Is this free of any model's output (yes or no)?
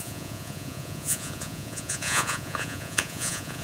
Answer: no